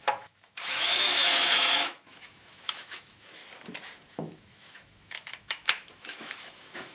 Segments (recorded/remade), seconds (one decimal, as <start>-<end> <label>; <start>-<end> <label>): 0.0-3.4 remade; 3.4-4.1 recorded; 4.1-6.9 remade

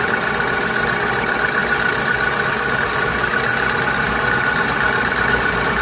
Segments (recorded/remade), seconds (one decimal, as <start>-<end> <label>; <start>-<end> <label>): 0.0-5.8 recorded

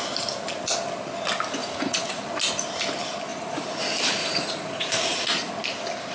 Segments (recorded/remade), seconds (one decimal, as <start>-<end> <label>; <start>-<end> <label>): 0.0-1.6 recorded; 1.6-2.2 remade; 2.2-3.3 recorded; 3.3-3.8 remade; 3.8-4.2 recorded; 4.2-5.5 remade; 5.5-6.1 recorded

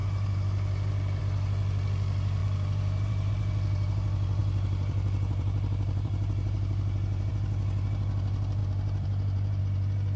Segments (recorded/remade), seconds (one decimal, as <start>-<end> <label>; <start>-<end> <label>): 0.0-1.2 remade; 1.2-2.4 recorded; 2.4-3.3 remade; 3.3-4.4 recorded; 4.4-7.3 remade; 7.3-8.6 recorded; 8.6-9.6 remade; 9.6-10.2 recorded

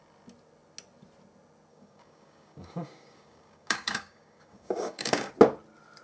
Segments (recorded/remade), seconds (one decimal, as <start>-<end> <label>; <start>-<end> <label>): 0.0-1.7 recorded; 1.7-5.3 remade; 5.3-6.0 recorded

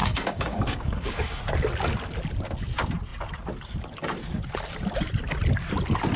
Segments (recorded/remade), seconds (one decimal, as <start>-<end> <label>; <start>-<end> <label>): 0.0-1.4 remade; 1.4-6.2 recorded

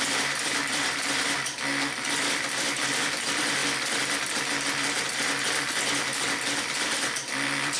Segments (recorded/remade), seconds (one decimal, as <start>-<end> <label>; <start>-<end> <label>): 0.0-3.6 remade; 3.6-6.6 recorded; 6.6-7.8 remade

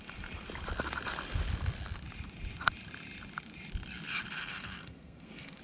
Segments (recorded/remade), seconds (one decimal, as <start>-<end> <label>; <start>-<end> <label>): 0.0-4.4 recorded; 4.4-5.6 remade